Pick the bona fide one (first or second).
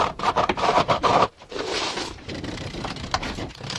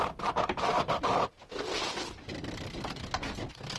second